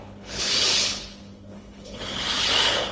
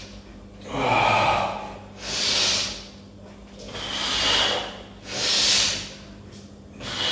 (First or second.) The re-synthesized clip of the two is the first